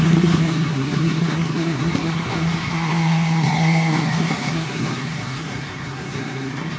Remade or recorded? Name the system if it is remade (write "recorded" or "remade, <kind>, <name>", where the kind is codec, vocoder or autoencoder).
remade, codec, SNAC